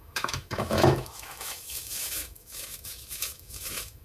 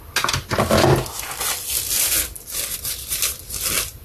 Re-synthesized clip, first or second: first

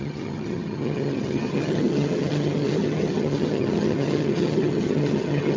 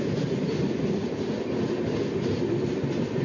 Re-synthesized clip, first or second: first